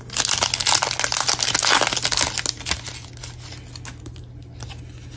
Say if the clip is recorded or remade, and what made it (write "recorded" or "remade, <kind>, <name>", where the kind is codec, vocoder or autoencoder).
recorded